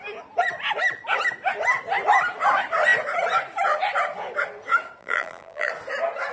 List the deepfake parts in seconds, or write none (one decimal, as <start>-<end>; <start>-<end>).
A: 5.0-5.7